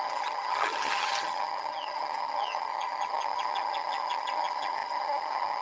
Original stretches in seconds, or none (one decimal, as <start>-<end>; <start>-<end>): none